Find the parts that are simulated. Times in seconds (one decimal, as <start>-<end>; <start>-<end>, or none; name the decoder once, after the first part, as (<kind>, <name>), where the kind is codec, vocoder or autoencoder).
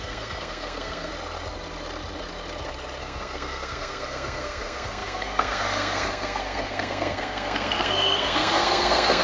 0.0-1.1 (codec, SNAC); 3.0-9.2